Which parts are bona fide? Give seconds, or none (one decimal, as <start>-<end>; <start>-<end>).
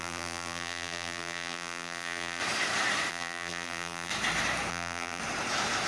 2.4-3.1; 4.1-4.7; 5.2-5.9